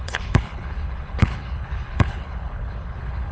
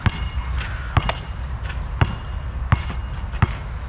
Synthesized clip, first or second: first